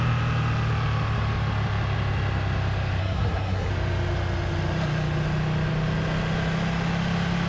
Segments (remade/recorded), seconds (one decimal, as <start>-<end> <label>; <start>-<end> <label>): 0.0-3.0 recorded; 3.0-3.7 remade; 3.7-7.5 recorded